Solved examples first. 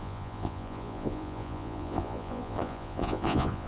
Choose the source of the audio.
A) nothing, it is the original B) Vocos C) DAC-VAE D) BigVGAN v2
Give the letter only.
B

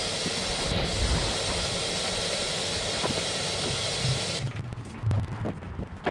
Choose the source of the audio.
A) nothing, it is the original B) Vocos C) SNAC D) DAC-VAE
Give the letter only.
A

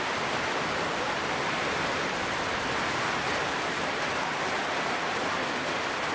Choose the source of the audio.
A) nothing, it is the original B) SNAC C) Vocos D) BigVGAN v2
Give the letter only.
A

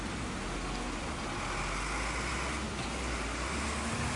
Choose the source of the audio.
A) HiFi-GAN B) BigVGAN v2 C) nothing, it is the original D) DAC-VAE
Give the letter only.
C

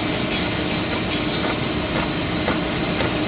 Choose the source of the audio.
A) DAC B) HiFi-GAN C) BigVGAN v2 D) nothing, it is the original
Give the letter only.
D